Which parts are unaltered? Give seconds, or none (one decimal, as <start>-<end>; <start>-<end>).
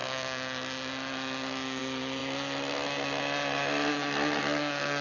0.0-5.0